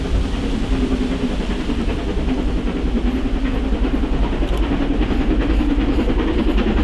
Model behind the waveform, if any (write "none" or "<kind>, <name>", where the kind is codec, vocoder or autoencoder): none